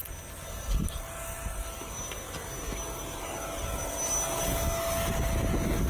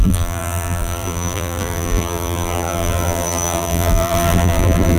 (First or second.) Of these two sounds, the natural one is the first